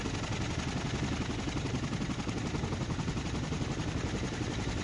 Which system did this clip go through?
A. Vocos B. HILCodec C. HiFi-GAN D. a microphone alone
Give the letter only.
D